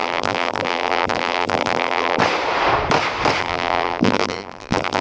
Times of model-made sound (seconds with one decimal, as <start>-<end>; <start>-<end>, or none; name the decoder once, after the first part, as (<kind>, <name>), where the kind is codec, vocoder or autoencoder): 0.0-2.2 (vocoder, BigVGAN v2); 3.4-5.0